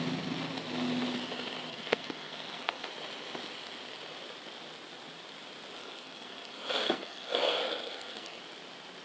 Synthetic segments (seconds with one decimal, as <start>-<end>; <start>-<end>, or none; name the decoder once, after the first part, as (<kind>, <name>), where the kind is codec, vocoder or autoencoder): 1.7-2.9 (codec, SNAC); 5.8-8.4